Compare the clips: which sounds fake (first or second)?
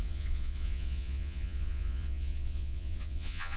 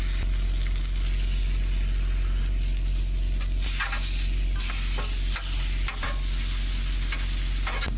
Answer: first